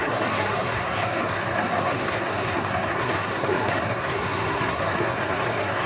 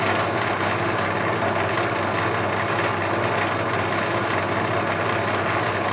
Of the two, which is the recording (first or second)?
second